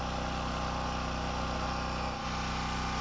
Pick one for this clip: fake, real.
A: real